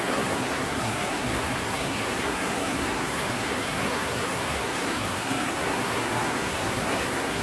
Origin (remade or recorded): remade